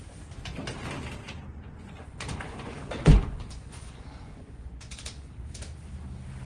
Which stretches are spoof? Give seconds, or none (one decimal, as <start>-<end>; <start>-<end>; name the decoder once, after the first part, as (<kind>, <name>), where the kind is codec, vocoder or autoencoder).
1.5-5.3 (vocoder, Vocos)